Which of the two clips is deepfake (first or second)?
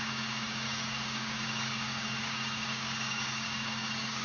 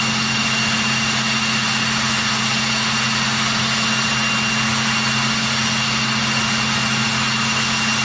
first